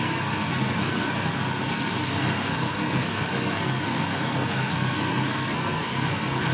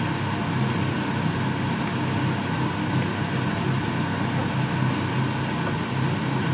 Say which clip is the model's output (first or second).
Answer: first